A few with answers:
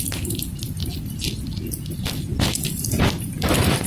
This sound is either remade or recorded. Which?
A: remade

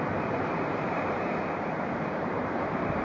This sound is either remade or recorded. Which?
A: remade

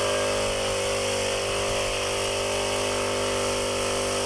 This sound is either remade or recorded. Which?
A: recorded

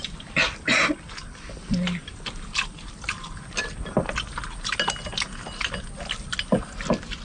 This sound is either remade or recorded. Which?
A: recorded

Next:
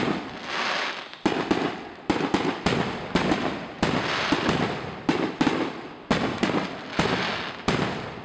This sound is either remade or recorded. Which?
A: recorded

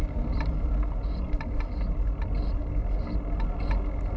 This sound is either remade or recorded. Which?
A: recorded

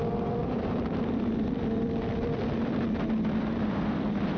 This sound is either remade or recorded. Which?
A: remade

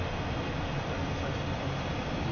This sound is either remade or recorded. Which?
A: recorded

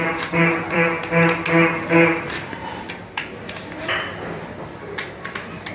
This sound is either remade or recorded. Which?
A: remade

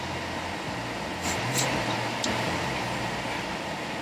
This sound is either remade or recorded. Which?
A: recorded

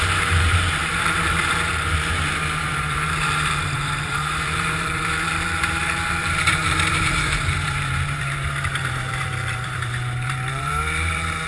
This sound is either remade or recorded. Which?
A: remade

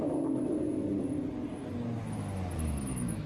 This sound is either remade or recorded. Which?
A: recorded